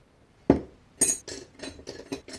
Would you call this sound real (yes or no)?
yes